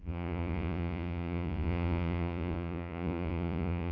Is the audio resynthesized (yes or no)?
yes